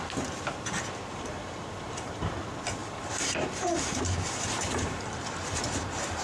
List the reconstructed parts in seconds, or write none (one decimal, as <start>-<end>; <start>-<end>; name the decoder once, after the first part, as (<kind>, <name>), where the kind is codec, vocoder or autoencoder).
1.1-2.3 (vocoder, BigVGAN v2); 2.8-6.2